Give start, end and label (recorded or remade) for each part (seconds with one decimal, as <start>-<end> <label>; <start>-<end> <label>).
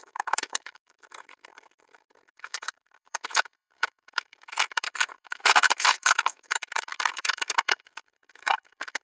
0.0-9.0 remade